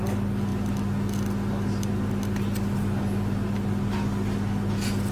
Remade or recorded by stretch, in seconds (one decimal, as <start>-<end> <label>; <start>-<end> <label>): 0.0-5.1 recorded